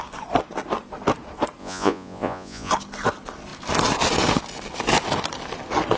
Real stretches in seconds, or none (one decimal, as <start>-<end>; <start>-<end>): 0.0-1.6; 2.7-6.0